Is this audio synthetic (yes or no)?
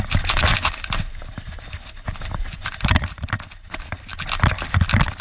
no